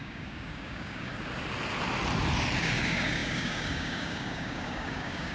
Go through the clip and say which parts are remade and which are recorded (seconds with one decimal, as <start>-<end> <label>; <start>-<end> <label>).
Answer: 0.0-1.1 remade; 1.1-2.6 recorded; 2.6-5.3 remade